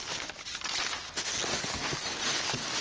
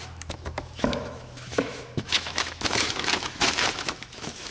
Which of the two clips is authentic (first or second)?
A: first